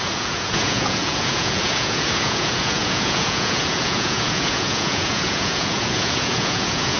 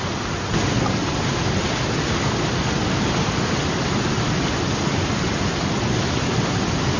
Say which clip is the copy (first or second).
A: first